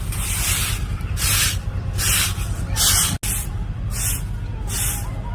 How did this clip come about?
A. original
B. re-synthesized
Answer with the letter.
A